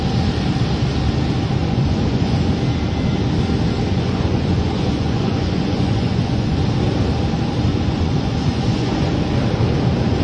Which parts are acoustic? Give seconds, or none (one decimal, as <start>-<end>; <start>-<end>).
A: 0.0-1.6; 2.5-3.9; 6.6-7.7; 9.2-10.2

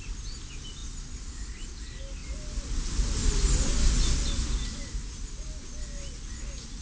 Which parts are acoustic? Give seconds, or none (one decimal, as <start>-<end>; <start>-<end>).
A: 0.0-6.8

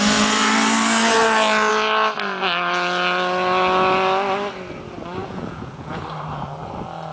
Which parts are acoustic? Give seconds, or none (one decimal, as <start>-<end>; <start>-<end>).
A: 0.0-5.2; 6.0-7.1